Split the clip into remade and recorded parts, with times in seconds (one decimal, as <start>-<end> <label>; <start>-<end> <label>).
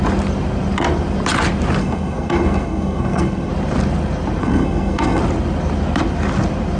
0.0-1.8 recorded; 1.8-3.5 remade; 3.5-4.4 recorded; 4.4-5.2 remade; 5.2-6.8 recorded